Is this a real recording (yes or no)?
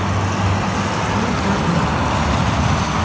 yes